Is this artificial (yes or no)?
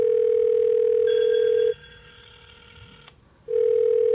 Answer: no